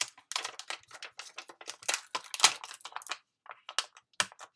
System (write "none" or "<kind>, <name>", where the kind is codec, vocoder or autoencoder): none